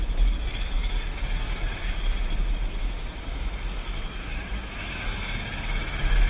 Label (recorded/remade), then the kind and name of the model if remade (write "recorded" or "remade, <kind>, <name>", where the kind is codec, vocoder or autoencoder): remade, autoencoder, DAC-VAE